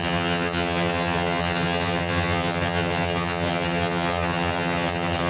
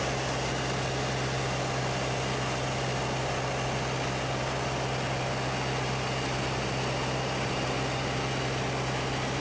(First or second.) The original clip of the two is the second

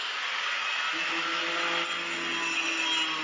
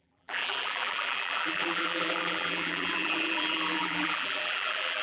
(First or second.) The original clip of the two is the first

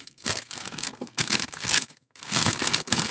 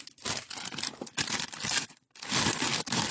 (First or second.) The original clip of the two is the second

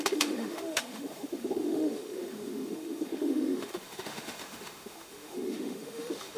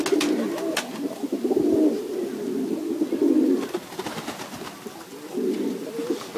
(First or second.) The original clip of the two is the second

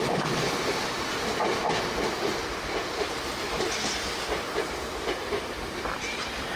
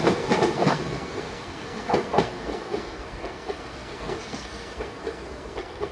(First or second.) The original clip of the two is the first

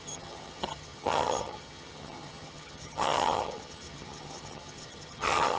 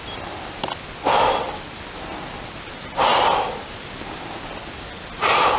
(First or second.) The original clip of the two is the second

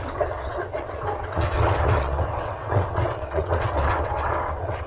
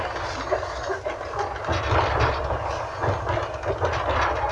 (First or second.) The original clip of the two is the second